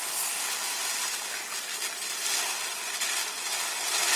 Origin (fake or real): real